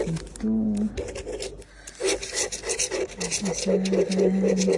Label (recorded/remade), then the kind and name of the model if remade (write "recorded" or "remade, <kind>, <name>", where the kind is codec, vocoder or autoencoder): recorded